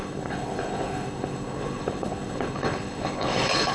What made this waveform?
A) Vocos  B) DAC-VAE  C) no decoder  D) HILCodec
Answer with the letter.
D